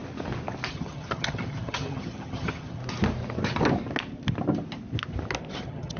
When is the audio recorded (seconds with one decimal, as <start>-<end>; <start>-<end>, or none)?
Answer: 0.0-0.7; 2.8-5.5